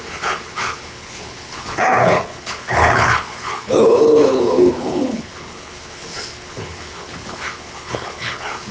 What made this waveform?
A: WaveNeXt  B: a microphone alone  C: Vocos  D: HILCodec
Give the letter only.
D